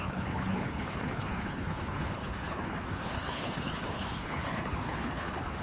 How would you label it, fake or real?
fake